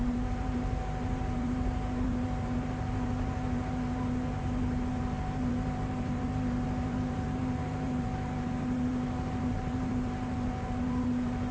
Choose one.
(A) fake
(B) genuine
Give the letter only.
A